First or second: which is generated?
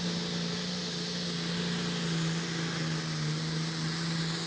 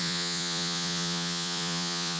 second